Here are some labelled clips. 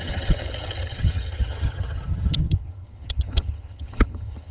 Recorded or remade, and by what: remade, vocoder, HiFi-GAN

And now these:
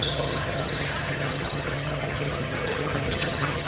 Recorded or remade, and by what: remade, vocoder, HiFi-GAN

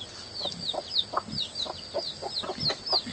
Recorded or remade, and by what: recorded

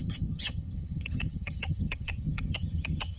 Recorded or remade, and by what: remade, vocoder, HiFi-GAN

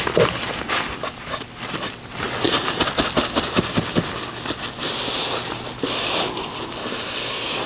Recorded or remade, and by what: recorded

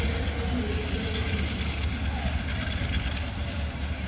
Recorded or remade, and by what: recorded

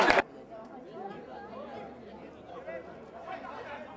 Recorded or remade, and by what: recorded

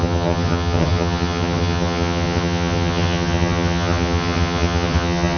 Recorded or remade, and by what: remade, vocoder, HiFi-GAN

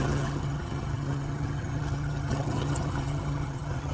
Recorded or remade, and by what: remade, vocoder, HiFi-GAN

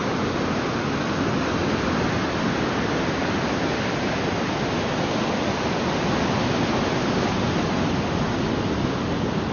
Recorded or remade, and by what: recorded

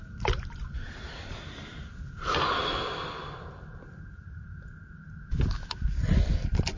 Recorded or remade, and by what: recorded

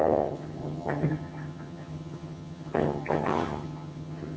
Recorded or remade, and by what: remade, vocoder, HiFi-GAN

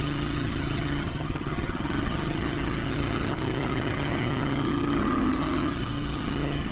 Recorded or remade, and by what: remade, vocoder, HiFi-GAN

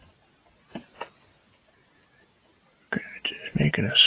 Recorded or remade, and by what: recorded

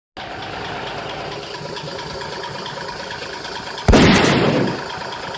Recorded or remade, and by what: recorded